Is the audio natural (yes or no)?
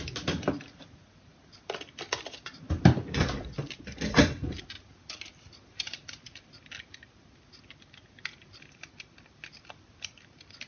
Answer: yes